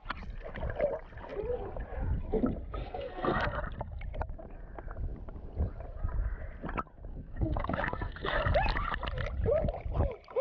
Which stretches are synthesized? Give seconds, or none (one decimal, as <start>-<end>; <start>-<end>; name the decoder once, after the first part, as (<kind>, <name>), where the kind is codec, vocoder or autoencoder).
2.8-3.6 (codec, SNAC); 7.1-8.4